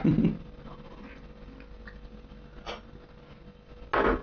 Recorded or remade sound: recorded